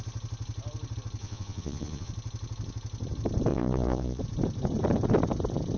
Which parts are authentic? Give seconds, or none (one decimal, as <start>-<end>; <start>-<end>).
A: 0.0-1.2; 2.1-3.5; 4.2-5.8